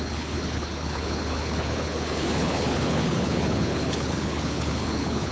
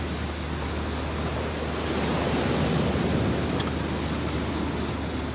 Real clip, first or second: second